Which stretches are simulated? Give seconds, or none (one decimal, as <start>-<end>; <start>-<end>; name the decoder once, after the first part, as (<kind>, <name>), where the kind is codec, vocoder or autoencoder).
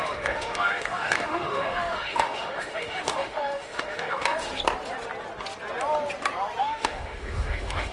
0.0-4.5 (autoencoder, DAC-VAE); 6.6-7.9